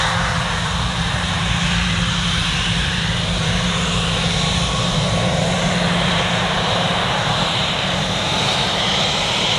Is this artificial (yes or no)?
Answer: yes